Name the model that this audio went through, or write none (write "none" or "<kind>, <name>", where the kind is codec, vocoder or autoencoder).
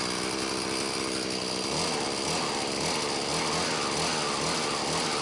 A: none